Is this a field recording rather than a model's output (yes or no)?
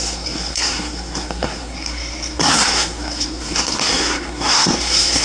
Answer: no